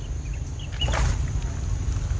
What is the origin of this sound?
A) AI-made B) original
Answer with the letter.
B